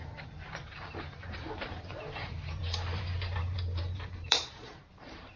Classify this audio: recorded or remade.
remade